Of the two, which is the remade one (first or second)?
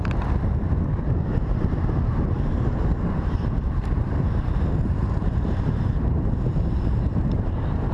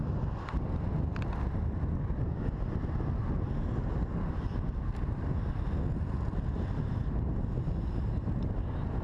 first